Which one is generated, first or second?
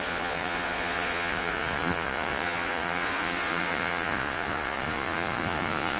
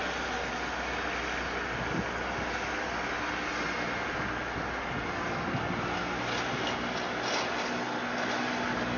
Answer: first